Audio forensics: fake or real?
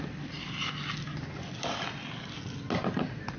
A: real